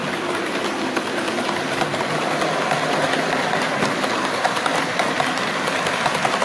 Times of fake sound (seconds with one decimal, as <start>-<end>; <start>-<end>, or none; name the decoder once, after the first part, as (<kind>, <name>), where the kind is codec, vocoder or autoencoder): 0.0-0.5 (vocoder, BigVGAN v2); 1.9-5.2

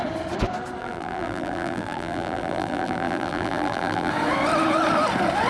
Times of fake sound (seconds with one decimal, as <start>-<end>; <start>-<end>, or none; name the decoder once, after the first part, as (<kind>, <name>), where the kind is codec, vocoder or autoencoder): 0.8-4.1 (vocoder, BigVGAN v2)

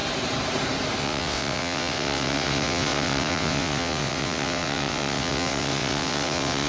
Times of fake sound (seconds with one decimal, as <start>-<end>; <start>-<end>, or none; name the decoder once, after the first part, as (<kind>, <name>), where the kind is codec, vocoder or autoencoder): 1.0-6.7 (vocoder, WaveNeXt)

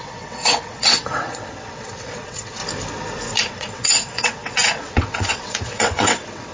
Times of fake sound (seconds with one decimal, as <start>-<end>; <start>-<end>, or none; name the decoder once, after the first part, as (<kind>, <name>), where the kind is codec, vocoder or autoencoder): 0.0-2.6 (vocoder, WaveNeXt); 3.4-6.5